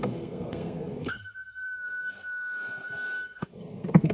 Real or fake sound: fake